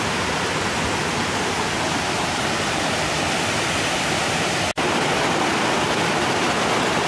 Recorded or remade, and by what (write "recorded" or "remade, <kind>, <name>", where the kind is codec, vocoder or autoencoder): remade, vocoder, BigVGAN v2